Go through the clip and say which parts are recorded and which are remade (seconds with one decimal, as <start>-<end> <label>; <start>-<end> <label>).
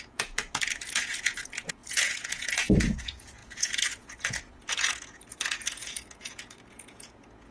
0.0-7.5 remade